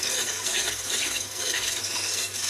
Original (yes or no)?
no